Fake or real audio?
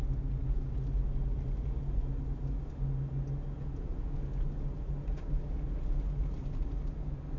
real